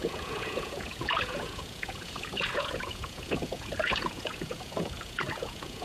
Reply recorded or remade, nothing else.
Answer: remade